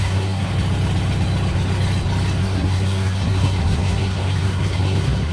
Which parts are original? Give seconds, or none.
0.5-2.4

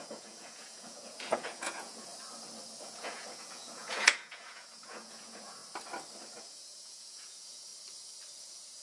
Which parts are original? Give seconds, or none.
2.1-2.8; 5.6-6.4; 7.7-8.4